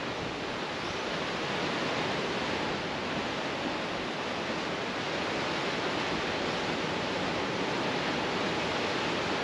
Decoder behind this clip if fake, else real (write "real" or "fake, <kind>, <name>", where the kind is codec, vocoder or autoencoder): real